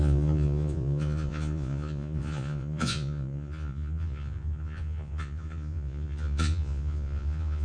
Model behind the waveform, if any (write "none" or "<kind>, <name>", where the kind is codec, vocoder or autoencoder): vocoder, Vocos